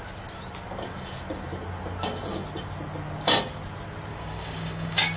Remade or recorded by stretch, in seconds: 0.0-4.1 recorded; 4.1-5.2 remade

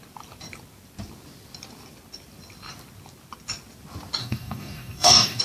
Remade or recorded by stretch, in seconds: 0.0-4.2 recorded; 4.2-5.4 remade

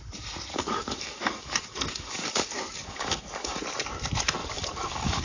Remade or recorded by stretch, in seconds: 0.0-0.5 recorded; 0.5-3.6 remade; 3.6-4.4 recorded; 4.4-5.2 remade

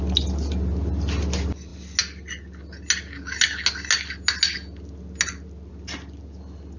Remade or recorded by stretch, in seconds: 0.0-6.8 recorded

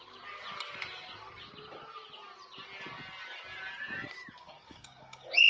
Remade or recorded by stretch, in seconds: 0.0-4.4 recorded; 4.4-5.5 remade

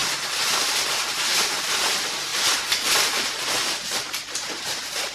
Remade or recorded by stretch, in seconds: 0.0-5.1 recorded

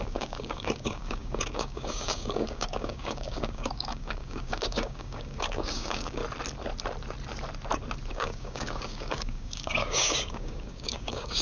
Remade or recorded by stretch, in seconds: 0.0-6.2 remade; 6.2-8.1 recorded; 8.1-11.4 remade